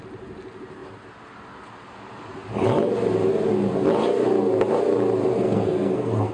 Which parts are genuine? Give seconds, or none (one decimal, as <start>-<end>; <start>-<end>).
0.0-5.3